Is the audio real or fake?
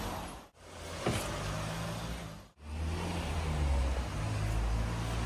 real